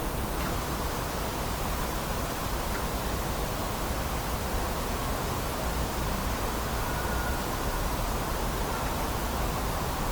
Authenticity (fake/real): real